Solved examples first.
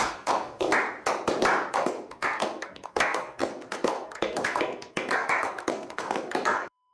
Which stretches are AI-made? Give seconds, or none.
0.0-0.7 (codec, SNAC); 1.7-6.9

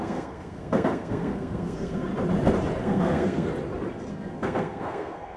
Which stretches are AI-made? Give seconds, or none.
0.0-2.1 (codec, SNAC); 2.8-3.5; 4.1-5.4